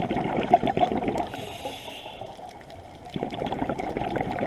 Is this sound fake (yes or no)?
yes